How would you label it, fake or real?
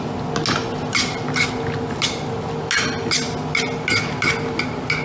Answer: real